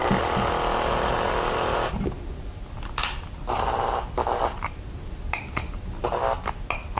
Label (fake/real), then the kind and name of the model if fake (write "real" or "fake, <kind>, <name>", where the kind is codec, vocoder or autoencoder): real